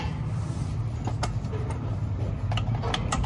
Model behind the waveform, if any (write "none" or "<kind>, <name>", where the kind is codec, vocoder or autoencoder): none